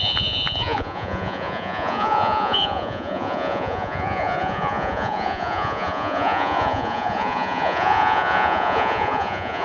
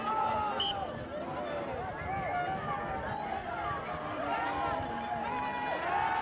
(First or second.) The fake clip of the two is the first